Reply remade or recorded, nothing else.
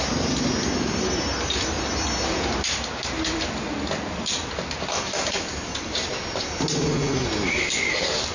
recorded